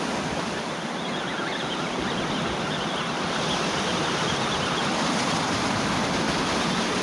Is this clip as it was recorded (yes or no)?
yes